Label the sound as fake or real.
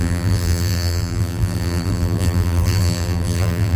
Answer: fake